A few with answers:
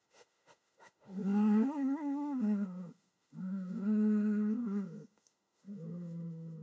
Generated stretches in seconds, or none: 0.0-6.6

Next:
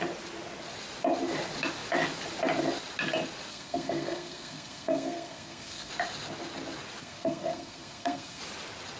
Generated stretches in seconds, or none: 3.5-5.9; 7.0-8.4

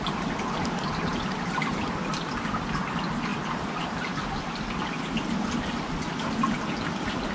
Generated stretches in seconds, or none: none

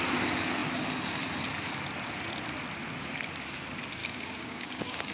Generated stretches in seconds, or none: 4.0-5.1

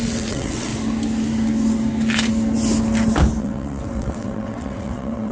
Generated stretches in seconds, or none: 0.0-0.7; 3.4-5.3